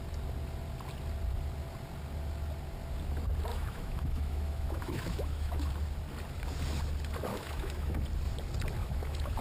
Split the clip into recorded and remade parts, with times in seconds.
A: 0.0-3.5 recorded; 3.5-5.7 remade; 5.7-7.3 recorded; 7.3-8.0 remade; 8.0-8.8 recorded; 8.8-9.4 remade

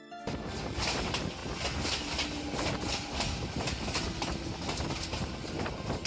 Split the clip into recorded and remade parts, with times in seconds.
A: 0.0-6.1 recorded

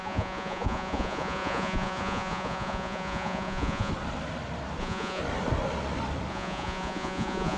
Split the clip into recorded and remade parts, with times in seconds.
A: 0.0-3.9 remade; 3.9-4.8 recorded; 4.8-5.2 remade; 5.2-6.3 recorded; 6.3-7.6 remade

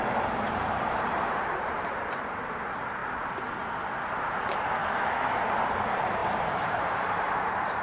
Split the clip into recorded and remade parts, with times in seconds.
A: 0.0-3.0 remade; 3.0-4.2 recorded; 4.2-4.8 remade; 4.8-5.4 recorded; 5.4-7.8 remade

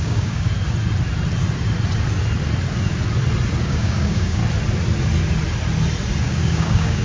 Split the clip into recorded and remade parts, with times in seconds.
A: 0.0-0.5 remade; 0.5-3.6 recorded; 3.6-4.4 remade; 4.4-6.2 recorded; 6.2-7.0 remade